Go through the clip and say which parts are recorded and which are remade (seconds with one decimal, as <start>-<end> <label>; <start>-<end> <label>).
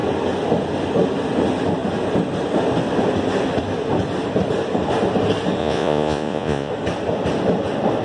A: 0.0-5.6 recorded; 5.6-6.7 remade; 6.7-8.0 recorded